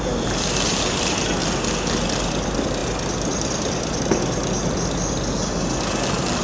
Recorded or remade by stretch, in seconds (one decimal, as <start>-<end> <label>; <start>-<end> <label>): 0.0-6.4 recorded